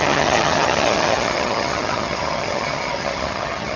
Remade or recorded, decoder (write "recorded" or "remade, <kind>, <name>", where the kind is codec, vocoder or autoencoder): remade, vocoder, HiFi-GAN